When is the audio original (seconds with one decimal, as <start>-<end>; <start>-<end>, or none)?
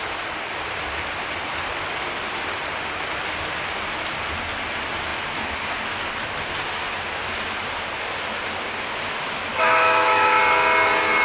0.0-9.5; 10.4-11.2